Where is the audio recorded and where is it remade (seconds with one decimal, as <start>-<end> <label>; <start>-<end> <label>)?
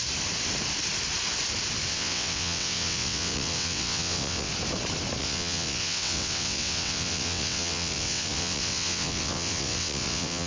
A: 0.0-1.9 recorded; 1.9-4.5 remade; 4.5-5.2 recorded; 5.2-10.5 remade